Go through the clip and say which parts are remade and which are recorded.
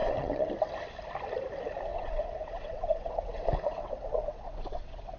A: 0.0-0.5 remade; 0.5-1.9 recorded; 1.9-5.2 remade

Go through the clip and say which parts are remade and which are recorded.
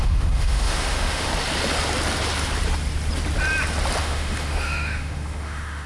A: 0.0-1.3 remade; 1.3-4.0 recorded; 4.0-5.9 remade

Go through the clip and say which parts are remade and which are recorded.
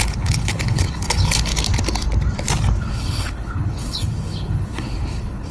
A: 0.0-1.5 remade; 1.5-2.8 recorded; 2.8-5.5 remade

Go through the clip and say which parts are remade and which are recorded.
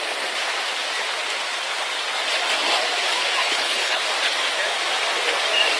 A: 0.0-3.4 recorded; 3.4-4.0 remade; 4.0-5.8 recorded